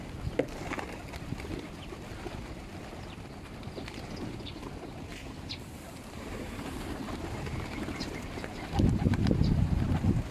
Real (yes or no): yes